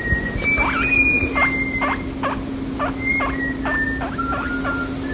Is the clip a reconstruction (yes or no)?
no